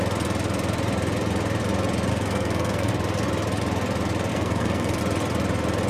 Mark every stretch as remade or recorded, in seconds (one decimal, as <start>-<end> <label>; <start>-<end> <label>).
0.0-2.1 recorded; 2.1-2.9 remade; 2.9-4.3 recorded; 4.3-5.0 remade; 5.0-5.9 recorded